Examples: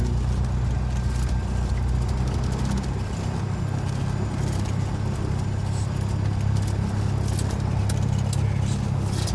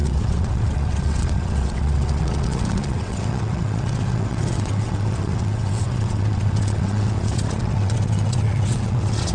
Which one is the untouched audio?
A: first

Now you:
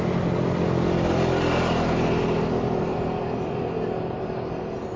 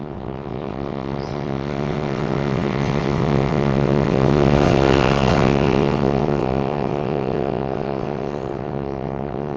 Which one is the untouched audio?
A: first